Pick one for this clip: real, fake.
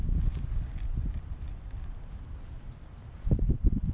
real